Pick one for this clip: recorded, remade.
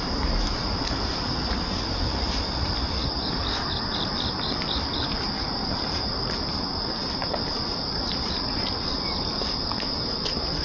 remade